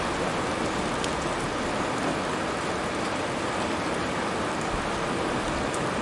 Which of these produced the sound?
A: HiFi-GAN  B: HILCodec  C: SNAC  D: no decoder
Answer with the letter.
D